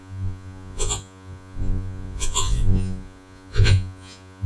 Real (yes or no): no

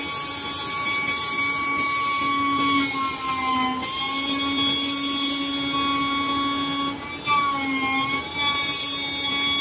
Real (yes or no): yes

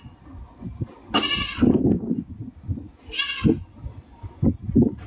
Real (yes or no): yes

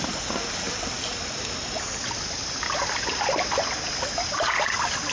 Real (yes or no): yes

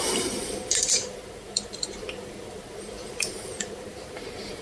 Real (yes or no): no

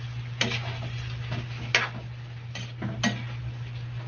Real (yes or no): yes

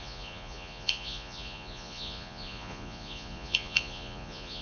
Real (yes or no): no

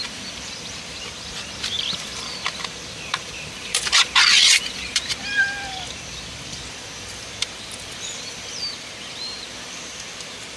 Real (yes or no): no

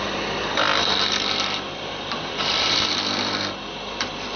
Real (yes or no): no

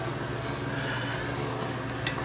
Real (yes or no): yes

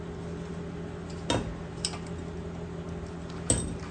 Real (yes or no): yes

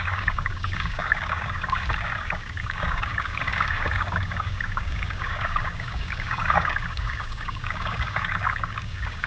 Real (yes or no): no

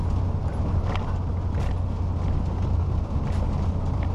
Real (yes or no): yes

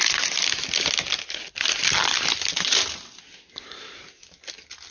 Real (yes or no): yes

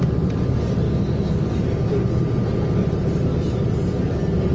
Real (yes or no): yes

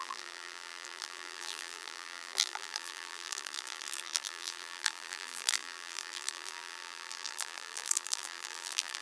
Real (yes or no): no